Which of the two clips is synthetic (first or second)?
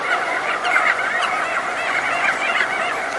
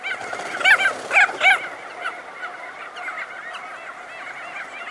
first